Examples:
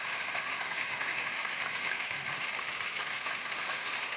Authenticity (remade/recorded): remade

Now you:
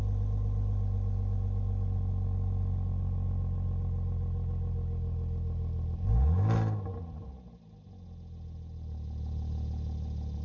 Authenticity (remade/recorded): recorded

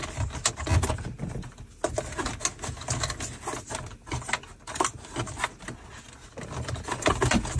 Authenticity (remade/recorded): recorded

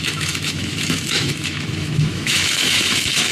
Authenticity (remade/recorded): remade